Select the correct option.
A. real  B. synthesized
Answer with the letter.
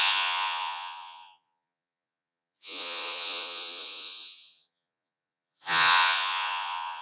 B